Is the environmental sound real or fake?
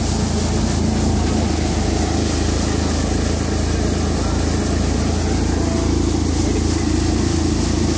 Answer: real